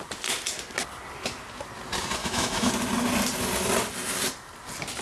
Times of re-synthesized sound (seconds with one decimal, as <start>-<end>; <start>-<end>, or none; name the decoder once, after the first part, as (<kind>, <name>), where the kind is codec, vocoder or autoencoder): 2.2-2.7 (autoencoder, DAC-VAE)

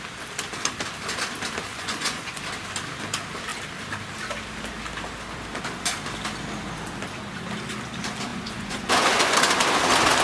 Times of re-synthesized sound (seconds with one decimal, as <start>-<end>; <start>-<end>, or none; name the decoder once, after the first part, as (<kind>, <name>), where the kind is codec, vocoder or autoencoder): 1.7-2.4 (vocoder, Vocos); 8.3-9.4

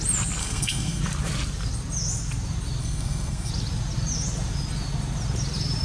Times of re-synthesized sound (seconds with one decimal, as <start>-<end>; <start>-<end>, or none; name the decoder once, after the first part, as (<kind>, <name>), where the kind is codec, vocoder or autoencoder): 0.4-1.0 (codec, SNAC); 2.8-3.5

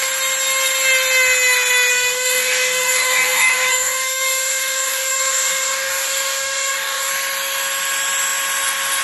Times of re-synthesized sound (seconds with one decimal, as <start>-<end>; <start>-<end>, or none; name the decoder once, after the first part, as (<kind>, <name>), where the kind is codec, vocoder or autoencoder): 1.9-7.1 (codec, DAC)

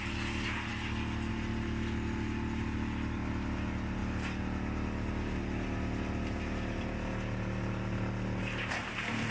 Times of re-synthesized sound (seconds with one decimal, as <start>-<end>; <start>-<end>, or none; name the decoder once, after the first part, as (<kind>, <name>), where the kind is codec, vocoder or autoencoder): none

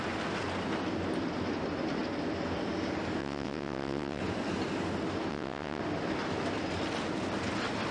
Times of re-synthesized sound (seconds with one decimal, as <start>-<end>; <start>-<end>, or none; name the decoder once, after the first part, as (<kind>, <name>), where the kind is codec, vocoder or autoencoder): 3.2-4.2 (vocoder, WaveNeXt); 5.3-5.8